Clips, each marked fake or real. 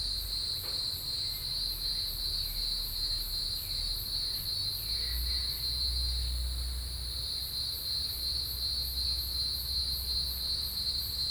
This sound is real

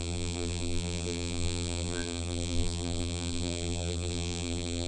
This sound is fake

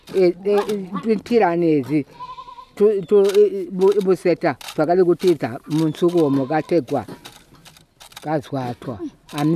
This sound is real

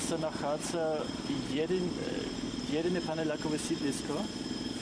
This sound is fake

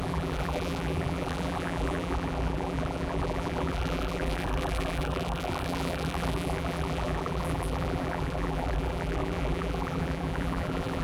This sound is fake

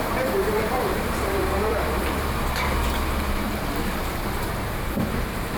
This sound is fake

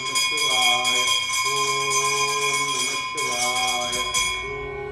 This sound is real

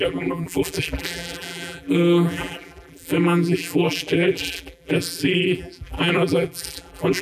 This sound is fake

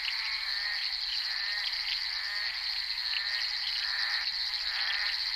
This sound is real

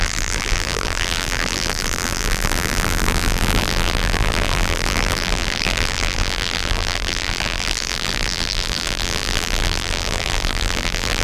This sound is fake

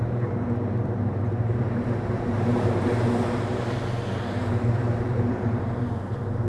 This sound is fake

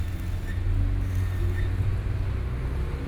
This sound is real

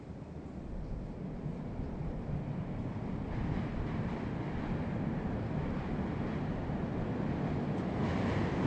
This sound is real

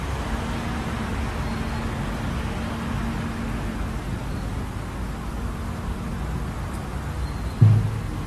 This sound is real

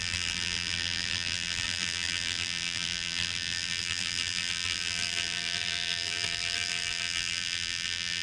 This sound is fake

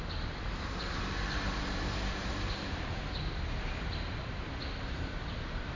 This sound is fake